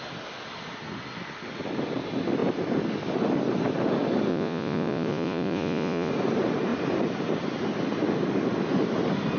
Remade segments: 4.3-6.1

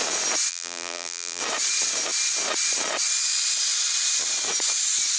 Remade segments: 0.5-1.4

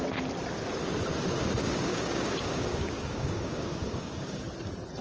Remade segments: 1.9-4.4

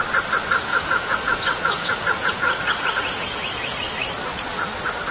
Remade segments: 0.7-3.8